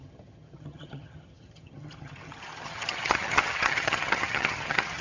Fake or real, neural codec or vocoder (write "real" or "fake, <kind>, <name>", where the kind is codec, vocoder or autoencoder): fake, vocoder, HiFi-GAN